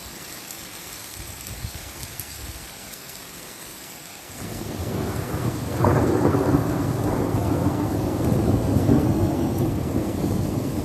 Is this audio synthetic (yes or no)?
yes